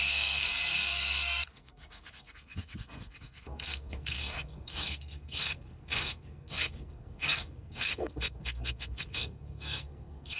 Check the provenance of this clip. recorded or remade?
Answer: remade